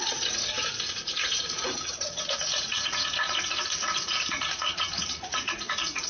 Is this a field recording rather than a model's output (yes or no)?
no